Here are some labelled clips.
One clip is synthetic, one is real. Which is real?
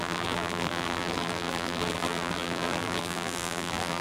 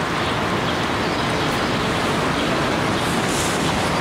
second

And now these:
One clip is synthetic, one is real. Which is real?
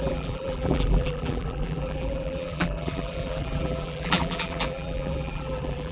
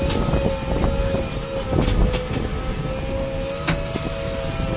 second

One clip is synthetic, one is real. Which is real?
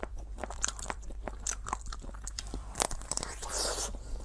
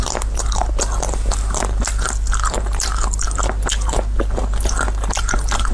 second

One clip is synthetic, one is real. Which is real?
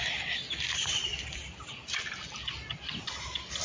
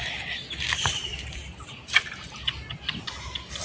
second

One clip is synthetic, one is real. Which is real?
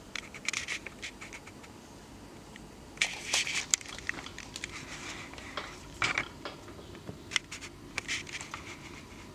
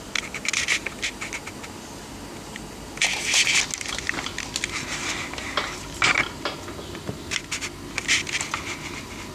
second